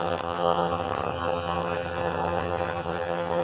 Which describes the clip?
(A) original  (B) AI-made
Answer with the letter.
B